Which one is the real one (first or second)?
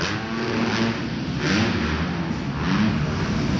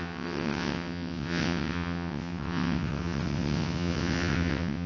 first